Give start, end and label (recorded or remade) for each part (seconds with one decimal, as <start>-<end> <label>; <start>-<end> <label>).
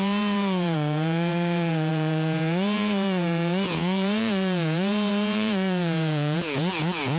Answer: 0.0-7.2 remade